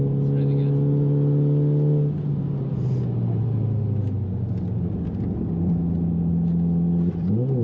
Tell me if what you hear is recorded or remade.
recorded